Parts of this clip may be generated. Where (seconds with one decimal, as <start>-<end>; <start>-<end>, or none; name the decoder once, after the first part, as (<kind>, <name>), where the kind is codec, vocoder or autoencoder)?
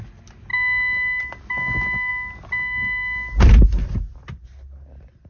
none